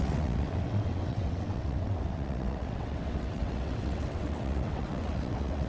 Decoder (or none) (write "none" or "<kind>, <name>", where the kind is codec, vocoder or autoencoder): vocoder, WaveNeXt